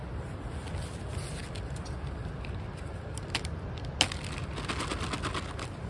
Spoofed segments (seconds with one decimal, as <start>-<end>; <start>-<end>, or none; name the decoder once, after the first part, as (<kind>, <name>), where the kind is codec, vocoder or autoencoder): 1.4-3.2 (vocoder, BigVGAN v2)